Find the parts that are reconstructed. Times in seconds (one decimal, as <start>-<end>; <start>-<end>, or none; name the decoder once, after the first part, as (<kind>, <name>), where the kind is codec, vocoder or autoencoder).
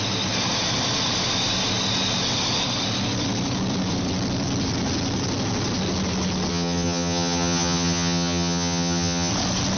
6.5-9.3 (vocoder, HiFi-GAN)